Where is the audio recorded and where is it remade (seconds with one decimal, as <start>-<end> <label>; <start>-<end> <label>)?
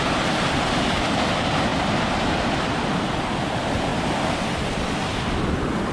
0.0-1.7 recorded; 1.7-2.8 remade; 2.8-3.9 recorded; 3.9-5.9 remade